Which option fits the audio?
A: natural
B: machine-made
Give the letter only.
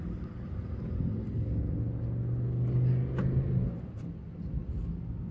A